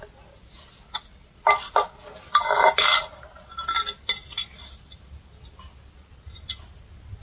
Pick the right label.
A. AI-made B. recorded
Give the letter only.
B